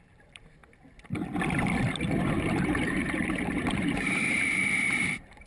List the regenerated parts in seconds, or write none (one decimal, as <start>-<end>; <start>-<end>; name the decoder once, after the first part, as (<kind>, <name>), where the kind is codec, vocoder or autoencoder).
0.0-0.6 (vocoder, BigVGAN v2); 2.3-5.5